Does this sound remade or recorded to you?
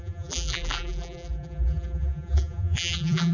remade